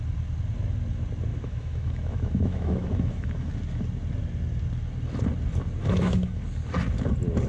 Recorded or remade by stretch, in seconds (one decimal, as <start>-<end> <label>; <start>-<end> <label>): 0.0-1.3 recorded; 1.3-3.5 remade; 3.5-5.8 recorded; 5.8-6.4 remade; 6.4-7.5 recorded